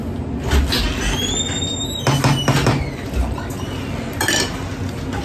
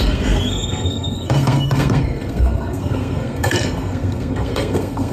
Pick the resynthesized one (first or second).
second